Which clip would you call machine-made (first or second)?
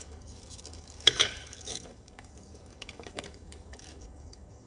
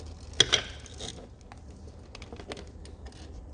first